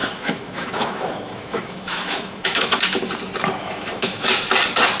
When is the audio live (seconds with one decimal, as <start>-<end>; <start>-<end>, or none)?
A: 3.0-3.6; 4.3-5.0